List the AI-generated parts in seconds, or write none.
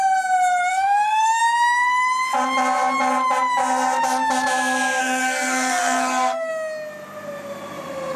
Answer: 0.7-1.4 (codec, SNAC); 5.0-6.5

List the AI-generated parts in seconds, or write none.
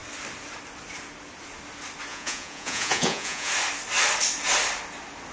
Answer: 2.1-3.5 (vocoder, Vocos)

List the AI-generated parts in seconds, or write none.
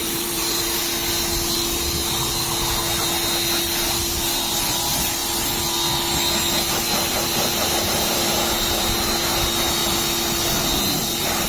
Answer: 0.0-0.8 (vocoder, BigVGAN v2)